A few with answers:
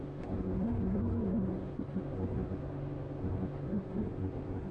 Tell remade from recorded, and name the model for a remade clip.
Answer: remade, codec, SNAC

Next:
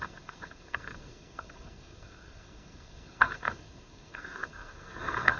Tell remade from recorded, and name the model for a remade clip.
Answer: remade, codec, SNAC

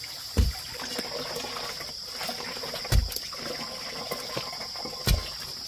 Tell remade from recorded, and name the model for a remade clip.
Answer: recorded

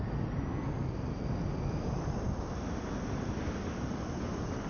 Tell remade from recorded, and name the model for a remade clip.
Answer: recorded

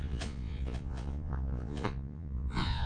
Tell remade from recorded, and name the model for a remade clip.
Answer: remade, vocoder, Vocos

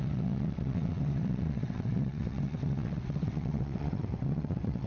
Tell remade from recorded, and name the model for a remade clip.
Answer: remade, vocoder, WaveNeXt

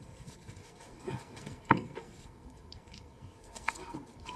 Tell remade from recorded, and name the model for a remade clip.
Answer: remade, codec, SNAC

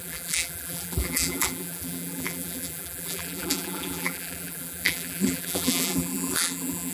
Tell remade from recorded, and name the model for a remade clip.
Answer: remade, vocoder, BigVGAN v2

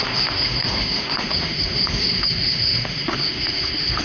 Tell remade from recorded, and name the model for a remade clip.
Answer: remade, autoencoder, DAC-VAE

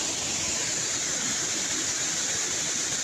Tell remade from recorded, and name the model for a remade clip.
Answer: recorded